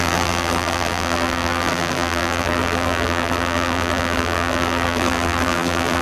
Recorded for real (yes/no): no